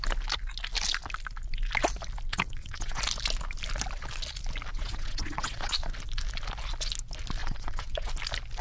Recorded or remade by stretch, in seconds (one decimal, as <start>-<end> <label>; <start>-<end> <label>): 0.0-2.3 recorded; 2.3-3.0 remade; 3.0-4.7 recorded; 4.7-5.7 remade; 5.7-7.4 recorded; 7.4-8.1 remade; 8.1-8.6 recorded